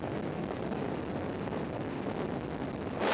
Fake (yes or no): no